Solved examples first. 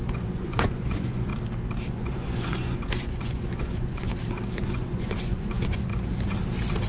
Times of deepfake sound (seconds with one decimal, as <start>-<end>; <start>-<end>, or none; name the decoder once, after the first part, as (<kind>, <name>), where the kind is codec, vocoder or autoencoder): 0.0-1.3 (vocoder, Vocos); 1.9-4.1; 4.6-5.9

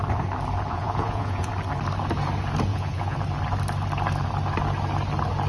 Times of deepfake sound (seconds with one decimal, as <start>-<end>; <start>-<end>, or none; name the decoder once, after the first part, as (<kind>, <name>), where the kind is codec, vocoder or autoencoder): 0.7-1.5 (vocoder, Vocos); 2.7-3.2

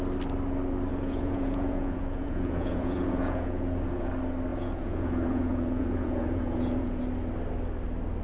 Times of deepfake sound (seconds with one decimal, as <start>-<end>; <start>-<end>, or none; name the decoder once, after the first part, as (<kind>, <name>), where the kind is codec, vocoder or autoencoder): 0.9-4.1 (vocoder, Vocos); 4.5-7.0